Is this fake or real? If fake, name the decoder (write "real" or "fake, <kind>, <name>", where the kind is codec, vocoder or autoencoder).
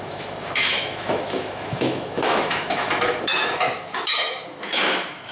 fake, autoencoder, DAC-VAE